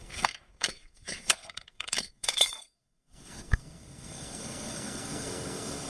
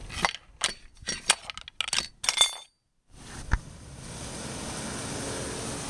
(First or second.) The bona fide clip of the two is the second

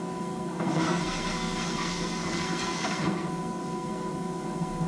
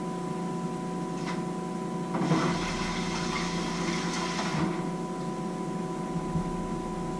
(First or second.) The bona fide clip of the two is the second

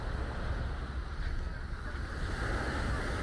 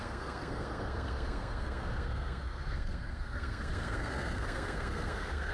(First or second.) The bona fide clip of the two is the first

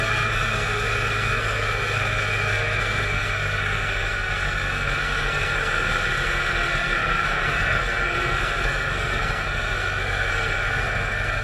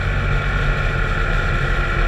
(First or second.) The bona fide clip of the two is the second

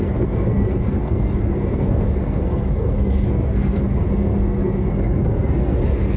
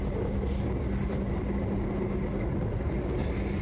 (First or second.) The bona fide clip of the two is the second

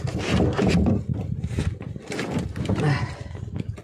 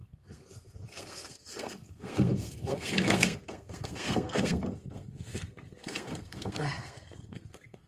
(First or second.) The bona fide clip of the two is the first